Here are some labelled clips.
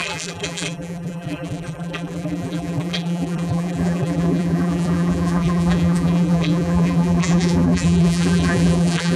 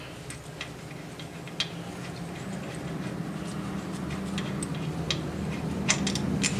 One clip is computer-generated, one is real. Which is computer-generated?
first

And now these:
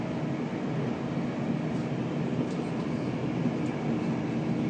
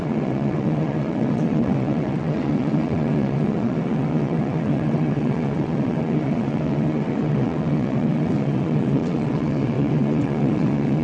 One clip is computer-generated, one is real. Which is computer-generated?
second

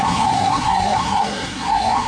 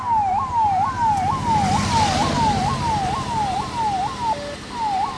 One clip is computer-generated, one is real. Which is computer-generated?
first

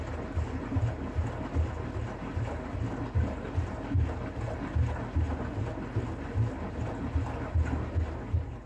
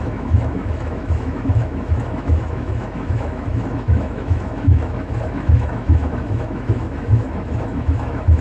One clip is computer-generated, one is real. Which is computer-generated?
second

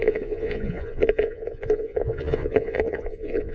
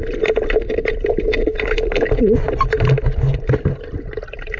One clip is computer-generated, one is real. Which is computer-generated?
first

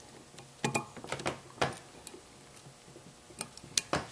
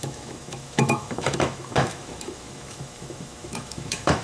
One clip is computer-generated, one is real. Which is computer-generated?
second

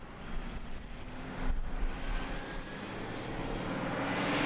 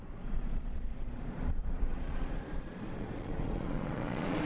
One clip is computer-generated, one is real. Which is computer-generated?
second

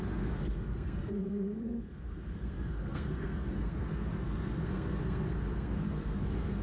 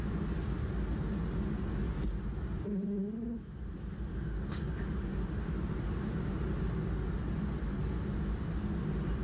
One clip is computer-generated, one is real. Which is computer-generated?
first